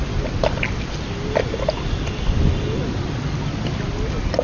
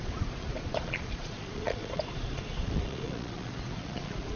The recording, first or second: first